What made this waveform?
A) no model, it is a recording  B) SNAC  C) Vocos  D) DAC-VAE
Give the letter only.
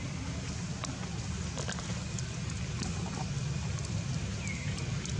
A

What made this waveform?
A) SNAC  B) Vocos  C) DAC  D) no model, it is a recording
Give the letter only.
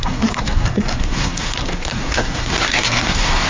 A